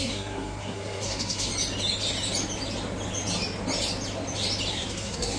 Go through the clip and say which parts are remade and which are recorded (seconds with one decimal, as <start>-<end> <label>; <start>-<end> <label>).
0.0-1.5 remade; 1.5-4.7 recorded; 4.7-5.4 remade